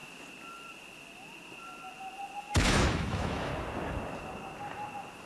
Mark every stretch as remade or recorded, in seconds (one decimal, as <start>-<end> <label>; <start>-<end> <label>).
0.0-2.4 recorded; 2.4-3.5 remade; 3.5-5.3 recorded